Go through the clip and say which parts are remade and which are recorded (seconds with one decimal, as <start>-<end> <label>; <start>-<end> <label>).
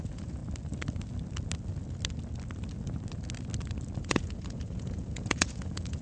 0.0-0.4 remade; 0.4-4.0 recorded; 4.0-6.0 remade